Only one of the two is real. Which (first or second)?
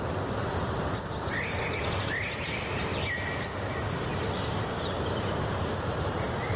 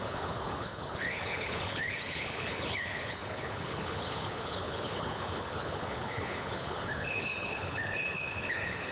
first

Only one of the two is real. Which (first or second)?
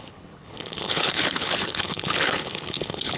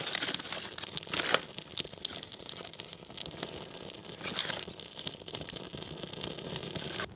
second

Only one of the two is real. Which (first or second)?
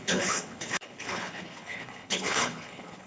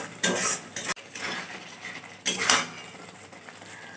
second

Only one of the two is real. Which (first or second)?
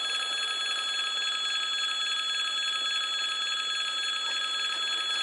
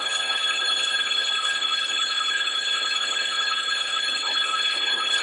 first